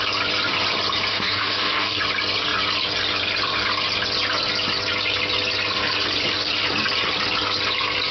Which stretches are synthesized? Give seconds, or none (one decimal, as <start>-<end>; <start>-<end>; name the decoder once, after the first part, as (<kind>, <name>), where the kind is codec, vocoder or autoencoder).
1.1-2.0 (codec, DAC)